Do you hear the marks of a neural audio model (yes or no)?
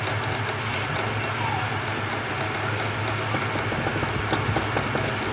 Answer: no